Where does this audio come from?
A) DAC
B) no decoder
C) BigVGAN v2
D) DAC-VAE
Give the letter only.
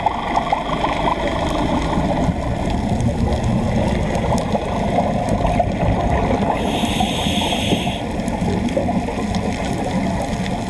B